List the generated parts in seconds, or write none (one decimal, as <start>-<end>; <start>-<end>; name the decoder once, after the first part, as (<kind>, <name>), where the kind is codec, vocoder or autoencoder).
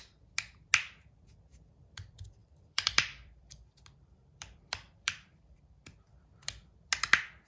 2.4-5.6 (vocoder, BigVGAN v2)